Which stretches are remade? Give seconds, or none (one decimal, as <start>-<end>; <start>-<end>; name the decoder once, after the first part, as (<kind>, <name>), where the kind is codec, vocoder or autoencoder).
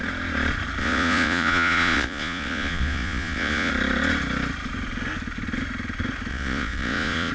0.8-3.7 (vocoder, Vocos); 6.3-7.3